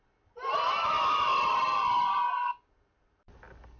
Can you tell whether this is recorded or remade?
recorded